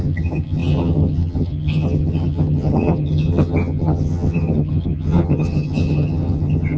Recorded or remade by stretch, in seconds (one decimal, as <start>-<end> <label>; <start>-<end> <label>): 0.0-6.8 remade